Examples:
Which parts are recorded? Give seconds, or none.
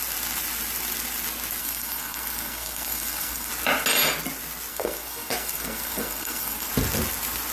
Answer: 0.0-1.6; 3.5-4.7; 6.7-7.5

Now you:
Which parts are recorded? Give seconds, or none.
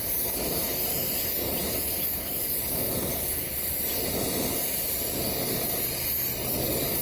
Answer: 0.0-7.0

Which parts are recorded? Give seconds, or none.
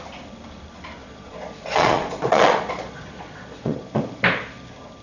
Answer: 0.0-1.0; 4.0-5.0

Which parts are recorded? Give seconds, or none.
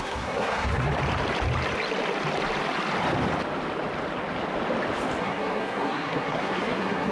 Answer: 0.9-5.2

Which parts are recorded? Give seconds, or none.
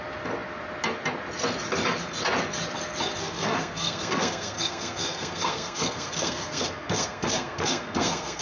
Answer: 0.0-3.2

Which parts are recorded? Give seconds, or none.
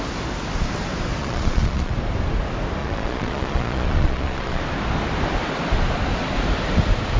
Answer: 0.0-1.2; 1.9-2.8; 4.6-7.2